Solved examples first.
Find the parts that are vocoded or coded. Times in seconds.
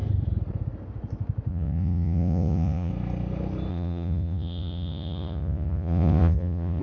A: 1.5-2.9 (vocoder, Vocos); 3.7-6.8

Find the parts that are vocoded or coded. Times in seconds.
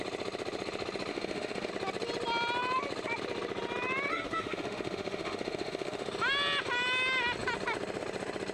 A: 1.1-1.7 (autoencoder, DAC-VAE); 4.1-6.1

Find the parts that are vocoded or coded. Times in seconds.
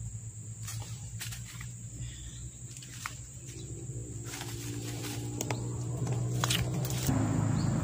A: 0.7-2.0 (vocoder, BigVGAN v2); 2.8-3.4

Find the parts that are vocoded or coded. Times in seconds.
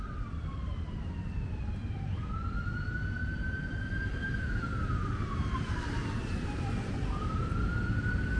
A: 3.6-7.5 (vocoder, BigVGAN v2)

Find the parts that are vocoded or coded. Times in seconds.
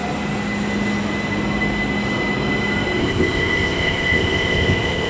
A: 3.0-5.1 (codec, ZipCodec)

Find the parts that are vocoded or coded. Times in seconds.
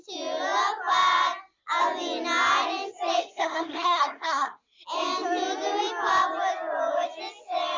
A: 3.2-4.6 (codec, SNAC)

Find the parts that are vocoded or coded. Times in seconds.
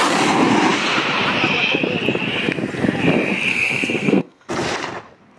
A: 3.5-4.5 (codec, SNAC)